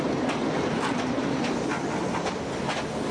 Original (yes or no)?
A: yes